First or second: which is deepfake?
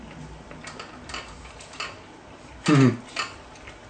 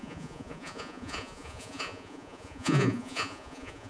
second